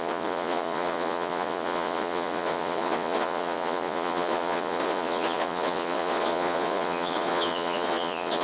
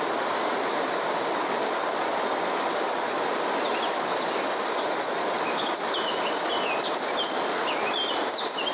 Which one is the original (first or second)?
second